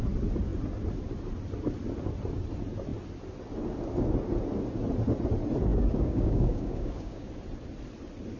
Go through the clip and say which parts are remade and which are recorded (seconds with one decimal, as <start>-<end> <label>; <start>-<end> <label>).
0.0-5.7 recorded; 5.7-7.3 remade; 7.3-8.4 recorded